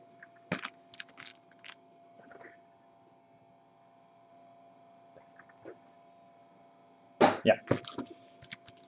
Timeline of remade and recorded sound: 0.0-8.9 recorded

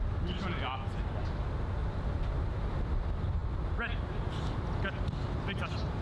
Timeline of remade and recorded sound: 0.0-1.8 recorded; 1.8-2.6 remade; 2.6-6.0 recorded

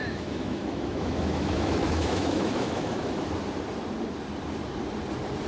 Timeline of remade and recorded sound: 0.0-3.3 remade; 3.3-5.5 recorded

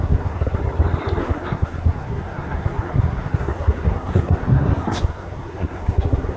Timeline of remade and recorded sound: 0.0-0.6 remade; 0.6-1.2 recorded; 1.2-6.4 remade

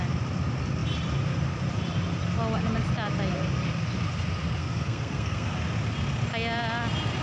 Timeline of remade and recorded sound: 0.0-4.6 recorded; 4.6-5.5 remade; 5.5-7.2 recorded

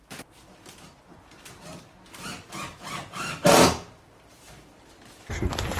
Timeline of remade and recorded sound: 0.0-1.7 remade; 1.7-3.1 recorded; 3.1-5.8 remade

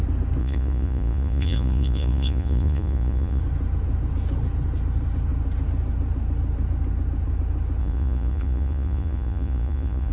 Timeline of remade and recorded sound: 0.0-0.4 recorded; 0.4-3.4 remade; 3.4-7.8 recorded; 7.8-10.1 remade